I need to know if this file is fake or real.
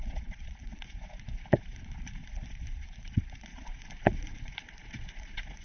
fake